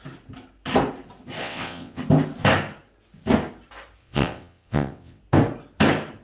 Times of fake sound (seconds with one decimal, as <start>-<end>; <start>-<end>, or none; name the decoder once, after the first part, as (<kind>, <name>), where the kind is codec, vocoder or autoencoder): 1.4-2.0 (vocoder, WaveNeXt); 4.0-5.2